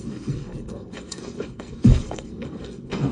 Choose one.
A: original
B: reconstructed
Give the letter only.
B